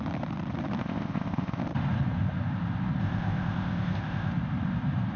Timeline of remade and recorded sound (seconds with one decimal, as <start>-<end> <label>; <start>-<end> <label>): 0.0-0.8 recorded; 0.8-1.6 remade; 1.6-3.0 recorded; 3.0-4.3 remade; 4.3-5.2 recorded